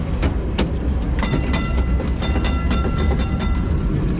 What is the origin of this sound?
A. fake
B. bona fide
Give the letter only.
B